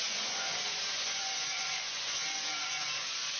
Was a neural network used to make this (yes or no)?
yes